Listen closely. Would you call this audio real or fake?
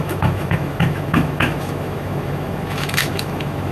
fake